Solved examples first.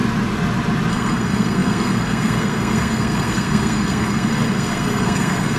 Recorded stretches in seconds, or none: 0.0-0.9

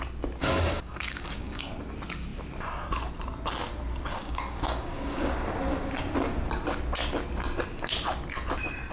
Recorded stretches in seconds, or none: 0.0-0.4; 1.7-4.1; 5.3-8.9

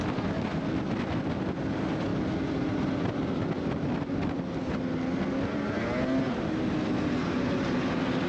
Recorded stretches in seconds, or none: 0.0-8.3

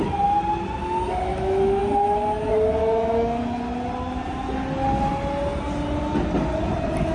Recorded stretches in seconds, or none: 0.0-1.3; 1.8-2.8; 3.4-7.1

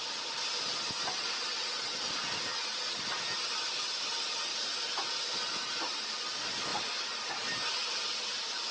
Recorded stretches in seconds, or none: 0.0-8.7

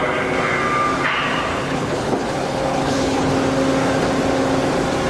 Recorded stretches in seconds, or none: 0.0-1.5; 3.3-5.1

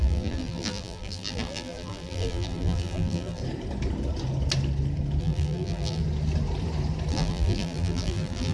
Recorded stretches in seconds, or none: 3.4-5.2; 6.0-7.1

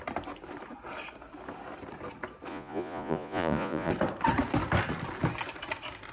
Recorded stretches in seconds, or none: 0.0-2.5; 3.9-6.1